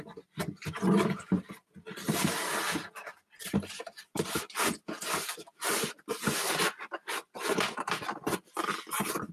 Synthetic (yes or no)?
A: no